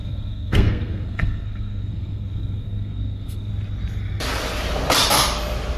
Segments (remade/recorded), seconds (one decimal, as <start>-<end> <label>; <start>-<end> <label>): 0.0-3.5 remade; 3.5-5.8 recorded